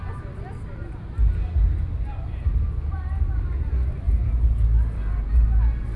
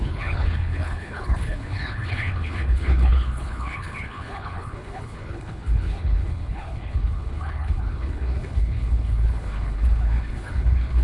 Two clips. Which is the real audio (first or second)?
first